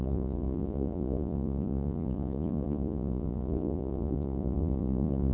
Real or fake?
fake